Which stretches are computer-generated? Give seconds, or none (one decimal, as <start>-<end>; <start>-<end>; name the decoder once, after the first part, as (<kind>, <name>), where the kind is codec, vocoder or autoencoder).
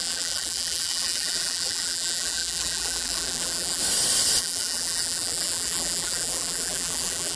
0.0-3.8 (vocoder, BigVGAN v2); 4.4-7.4